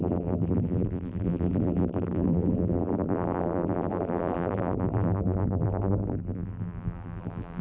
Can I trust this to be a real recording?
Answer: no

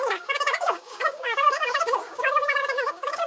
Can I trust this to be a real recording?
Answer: no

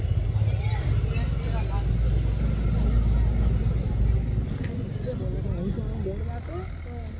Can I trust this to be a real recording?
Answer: yes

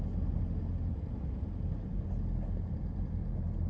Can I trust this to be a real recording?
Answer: yes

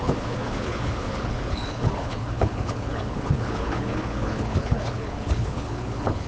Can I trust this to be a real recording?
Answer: no